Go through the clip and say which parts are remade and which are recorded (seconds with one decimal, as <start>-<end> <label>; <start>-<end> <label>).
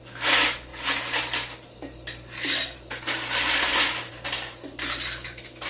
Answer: 0.0-5.7 recorded